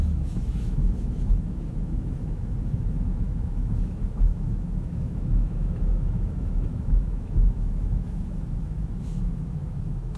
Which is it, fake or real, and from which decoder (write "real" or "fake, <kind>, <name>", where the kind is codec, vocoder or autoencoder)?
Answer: fake, autoencoder, DAC-VAE